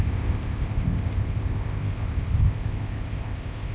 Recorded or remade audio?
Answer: remade